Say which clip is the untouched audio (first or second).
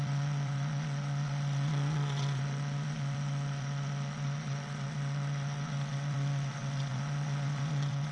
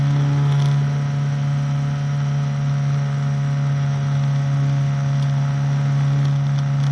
second